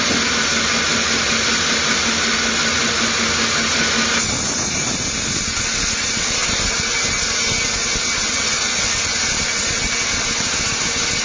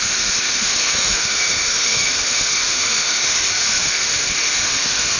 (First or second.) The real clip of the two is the first